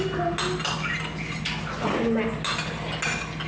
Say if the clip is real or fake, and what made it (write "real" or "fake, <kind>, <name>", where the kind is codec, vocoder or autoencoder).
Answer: real